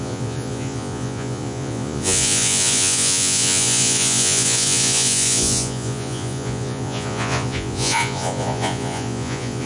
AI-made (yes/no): yes